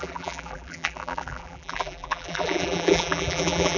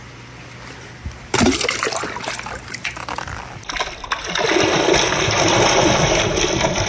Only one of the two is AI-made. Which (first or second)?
first